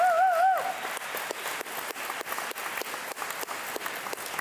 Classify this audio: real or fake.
real